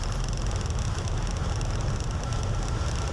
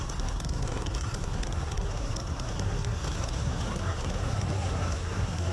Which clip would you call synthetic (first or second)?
second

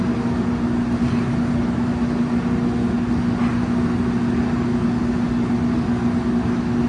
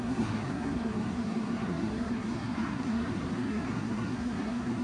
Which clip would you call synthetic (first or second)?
second